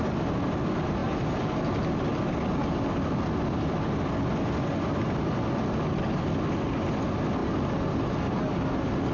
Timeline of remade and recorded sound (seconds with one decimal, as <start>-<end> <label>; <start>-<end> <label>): 0.0-9.1 recorded